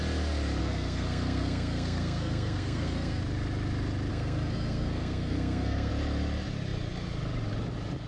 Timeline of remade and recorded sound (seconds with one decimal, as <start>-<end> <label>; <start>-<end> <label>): 0.0-0.6 recorded; 0.6-3.2 remade; 3.2-4.1 recorded; 4.1-5.9 remade; 5.9-8.1 recorded